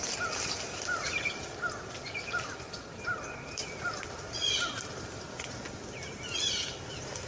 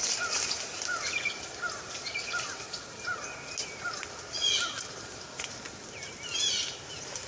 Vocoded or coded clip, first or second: first